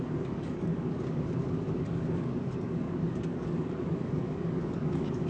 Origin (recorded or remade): remade